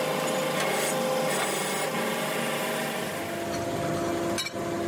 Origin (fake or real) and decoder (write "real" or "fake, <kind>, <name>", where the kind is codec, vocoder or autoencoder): real